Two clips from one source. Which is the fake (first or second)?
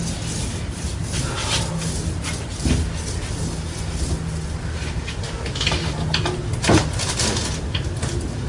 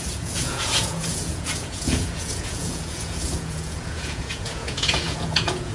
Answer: second